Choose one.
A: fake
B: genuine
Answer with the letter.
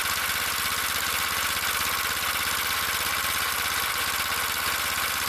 B